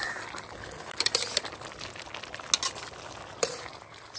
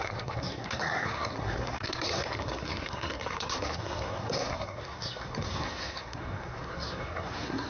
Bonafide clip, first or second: first